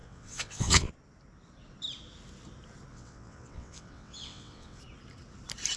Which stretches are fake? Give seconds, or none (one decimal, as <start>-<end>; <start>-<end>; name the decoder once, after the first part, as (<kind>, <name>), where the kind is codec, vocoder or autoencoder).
0.0-0.9 (vocoder, WaveNeXt); 2.9-4.8